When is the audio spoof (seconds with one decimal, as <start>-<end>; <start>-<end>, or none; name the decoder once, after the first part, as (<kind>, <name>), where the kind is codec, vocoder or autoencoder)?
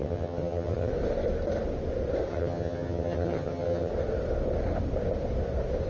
0.0-0.9 (vocoder, HiFi-GAN); 2.3-3.9